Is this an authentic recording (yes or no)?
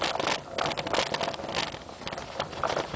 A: yes